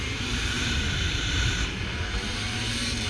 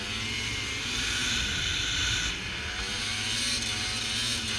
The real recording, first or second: second